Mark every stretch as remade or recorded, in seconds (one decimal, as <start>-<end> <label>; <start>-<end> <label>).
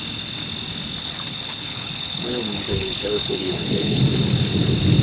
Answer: 0.0-1.0 recorded; 1.0-4.0 remade; 4.0-5.0 recorded